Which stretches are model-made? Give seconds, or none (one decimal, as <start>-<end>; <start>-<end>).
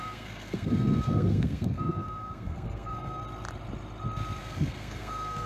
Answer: 0.0-3.2; 4.4-5.5